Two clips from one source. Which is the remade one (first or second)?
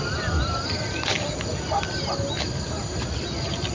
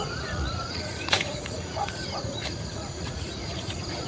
second